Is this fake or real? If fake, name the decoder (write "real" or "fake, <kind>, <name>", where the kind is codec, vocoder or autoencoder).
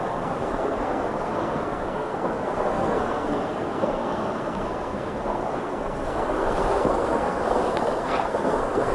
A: fake, codec, SNAC